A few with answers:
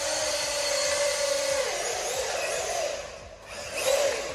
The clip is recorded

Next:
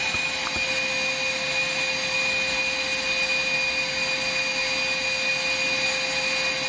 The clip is recorded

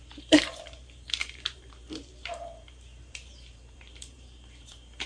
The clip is remade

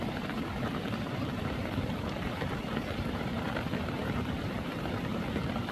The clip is remade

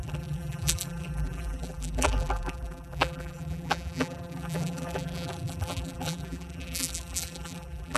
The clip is remade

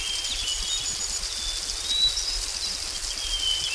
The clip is recorded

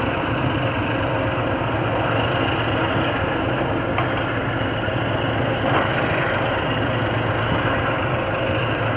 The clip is recorded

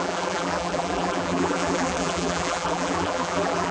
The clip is remade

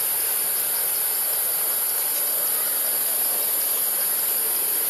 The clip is recorded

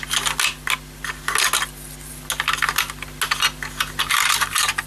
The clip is recorded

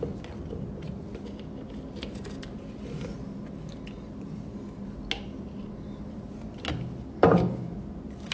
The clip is recorded